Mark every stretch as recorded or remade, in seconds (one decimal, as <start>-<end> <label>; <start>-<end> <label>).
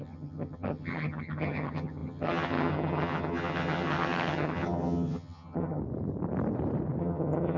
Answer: 0.0-5.8 remade; 5.8-7.0 recorded; 7.0-7.6 remade